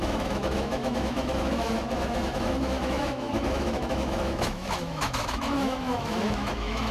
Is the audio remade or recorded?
remade